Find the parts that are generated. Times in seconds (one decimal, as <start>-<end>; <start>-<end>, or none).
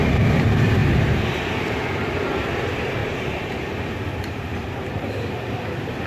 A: 0.8-2.3; 3.0-3.5; 4.1-5.1